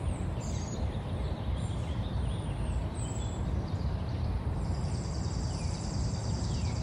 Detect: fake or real fake